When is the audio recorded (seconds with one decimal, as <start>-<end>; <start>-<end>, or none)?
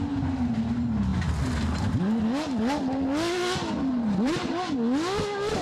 0.0-3.9; 4.5-5.6